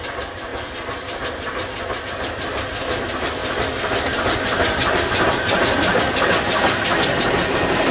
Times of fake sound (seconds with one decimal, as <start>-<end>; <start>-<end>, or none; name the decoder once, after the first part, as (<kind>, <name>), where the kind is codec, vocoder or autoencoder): 0.5-2.0 (vocoder, BigVGAN v2)